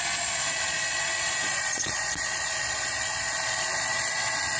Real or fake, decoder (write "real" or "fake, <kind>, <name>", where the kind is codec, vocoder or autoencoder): fake, vocoder, Vocos